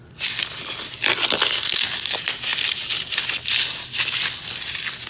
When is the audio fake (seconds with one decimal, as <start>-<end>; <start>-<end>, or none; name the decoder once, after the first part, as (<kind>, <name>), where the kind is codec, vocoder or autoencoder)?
none